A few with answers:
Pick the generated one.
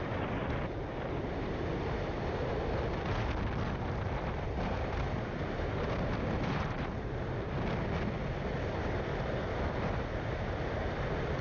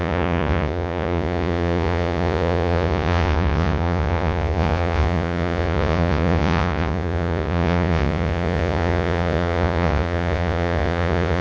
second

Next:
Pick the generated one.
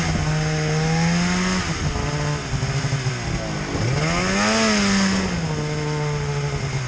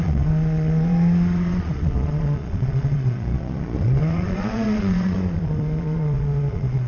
second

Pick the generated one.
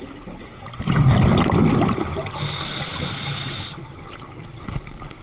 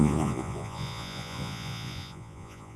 second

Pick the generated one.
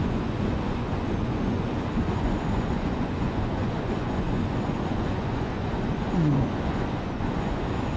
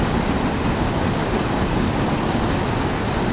first